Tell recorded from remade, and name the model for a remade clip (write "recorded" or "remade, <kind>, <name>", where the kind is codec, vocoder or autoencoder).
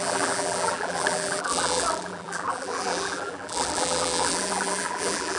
remade, vocoder, BigVGAN v2